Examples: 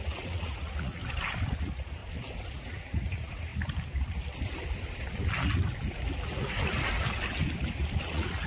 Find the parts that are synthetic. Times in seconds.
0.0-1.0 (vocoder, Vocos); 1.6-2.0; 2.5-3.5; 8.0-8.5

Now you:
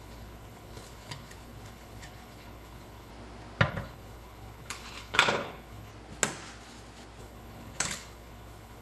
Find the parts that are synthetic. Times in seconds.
0.0-3.1 (codec, HILCodec); 3.7-5.9; 7.2-8.8

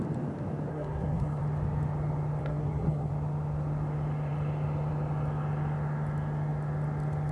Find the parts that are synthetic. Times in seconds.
0.7-1.4 (codec, SNAC); 2.4-3.1

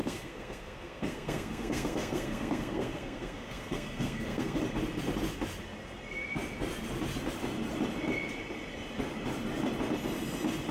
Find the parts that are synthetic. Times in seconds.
0.0-4.6 (codec, SNAC)

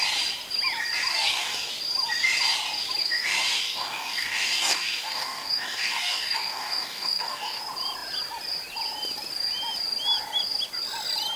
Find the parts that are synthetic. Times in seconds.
1.1-1.7 (codec, DAC); 3.0-7.6

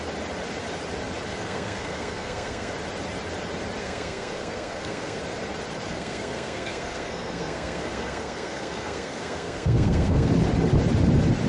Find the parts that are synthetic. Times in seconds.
1.3-2.7 (codec, SNAC); 3.8-5.2; 5.9-10.3